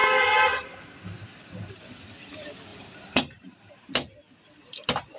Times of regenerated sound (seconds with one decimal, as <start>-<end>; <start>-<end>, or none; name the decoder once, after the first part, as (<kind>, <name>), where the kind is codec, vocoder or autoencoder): 0.0-1.7 (vocoder, BigVGAN v2); 2.7-3.9